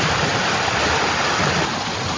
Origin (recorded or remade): recorded